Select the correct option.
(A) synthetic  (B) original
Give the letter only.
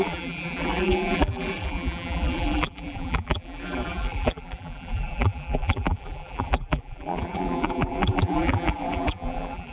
A